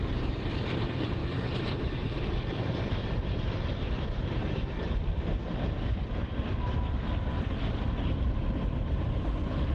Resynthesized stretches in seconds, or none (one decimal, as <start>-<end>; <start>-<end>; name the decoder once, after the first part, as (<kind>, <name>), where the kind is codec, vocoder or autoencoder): 0.0-6.0 (vocoder, BigVGAN v2); 8.8-9.7